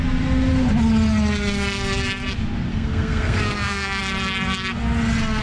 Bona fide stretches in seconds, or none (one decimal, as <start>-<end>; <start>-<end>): 0.0-2.7; 4.0-5.4